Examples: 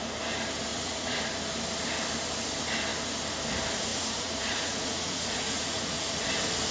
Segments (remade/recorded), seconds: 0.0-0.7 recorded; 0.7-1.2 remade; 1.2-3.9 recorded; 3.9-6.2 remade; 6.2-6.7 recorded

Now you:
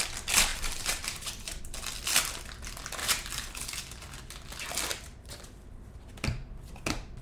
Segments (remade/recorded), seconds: 0.0-0.5 recorded; 0.5-1.6 remade; 1.6-3.0 recorded; 3.0-3.5 remade; 3.5-4.9 recorded; 4.9-5.8 remade; 5.8-7.2 recorded

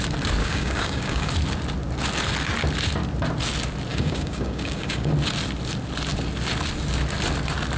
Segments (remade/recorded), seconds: 0.0-0.4 recorded; 0.4-1.3 remade; 1.3-3.9 recorded; 3.9-5.1 remade; 5.1-7.8 recorded

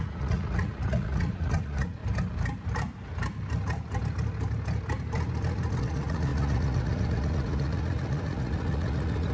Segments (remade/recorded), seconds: 0.0-2.0 remade; 2.0-5.8 recorded; 5.8-9.3 remade